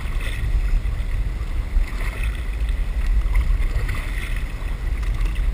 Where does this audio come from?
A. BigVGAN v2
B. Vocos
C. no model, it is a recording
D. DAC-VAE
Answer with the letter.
C